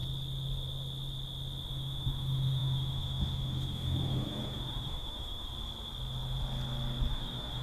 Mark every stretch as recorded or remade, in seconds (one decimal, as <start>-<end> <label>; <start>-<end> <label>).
0.0-1.7 recorded; 1.7-5.5 remade; 5.5-7.1 recorded; 7.1-7.6 remade